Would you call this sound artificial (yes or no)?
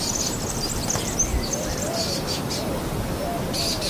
no